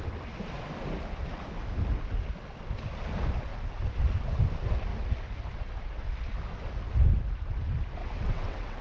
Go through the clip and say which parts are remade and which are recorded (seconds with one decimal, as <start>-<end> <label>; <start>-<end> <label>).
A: 0.0-8.0 recorded; 8.0-8.8 remade